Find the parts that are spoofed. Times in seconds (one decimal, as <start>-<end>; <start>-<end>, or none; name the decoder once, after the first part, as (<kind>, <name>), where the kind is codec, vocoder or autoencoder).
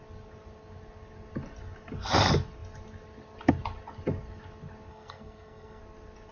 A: 4.9-5.8 (codec, SNAC)